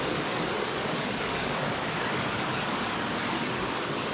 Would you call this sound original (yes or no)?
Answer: no